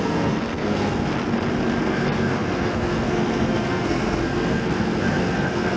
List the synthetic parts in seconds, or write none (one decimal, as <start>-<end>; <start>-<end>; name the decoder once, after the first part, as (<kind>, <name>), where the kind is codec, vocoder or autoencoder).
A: 0.0-1.1 (codec, SNAC); 1.8-5.8

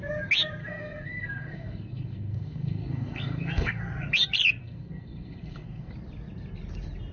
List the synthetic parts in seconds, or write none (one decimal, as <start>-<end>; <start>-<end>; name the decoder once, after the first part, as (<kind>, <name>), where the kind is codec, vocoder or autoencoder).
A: 0.6-3.8 (codec, SNAC); 4.6-5.9

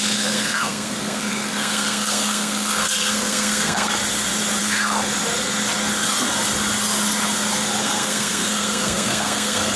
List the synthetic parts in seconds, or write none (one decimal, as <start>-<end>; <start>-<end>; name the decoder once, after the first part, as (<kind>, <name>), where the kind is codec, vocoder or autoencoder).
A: 0.0-4.0 (codec, SNAC); 4.6-5.1; 7.8-9.8